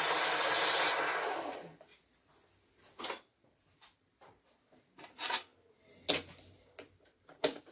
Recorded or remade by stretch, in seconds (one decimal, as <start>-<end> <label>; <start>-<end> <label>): 0.0-1.9 remade; 1.9-3.1 recorded; 3.1-5.5 remade; 5.5-6.1 recorded; 6.1-7.7 remade